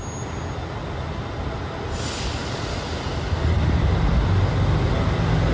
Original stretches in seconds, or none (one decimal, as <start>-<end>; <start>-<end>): 0.0-5.5